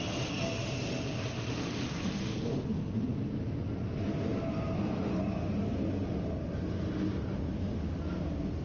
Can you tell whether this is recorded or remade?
recorded